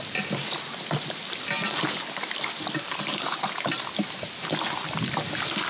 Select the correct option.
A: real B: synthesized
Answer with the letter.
A